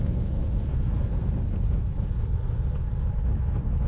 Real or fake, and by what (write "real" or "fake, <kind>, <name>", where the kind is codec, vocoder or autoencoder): real